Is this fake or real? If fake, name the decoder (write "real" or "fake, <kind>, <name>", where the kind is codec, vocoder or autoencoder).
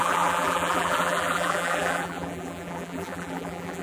fake, vocoder, BigVGAN v2